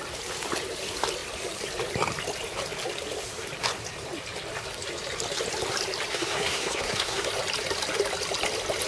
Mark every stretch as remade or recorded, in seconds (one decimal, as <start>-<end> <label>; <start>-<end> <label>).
0.0-6.1 recorded; 6.1-7.3 remade; 7.3-8.9 recorded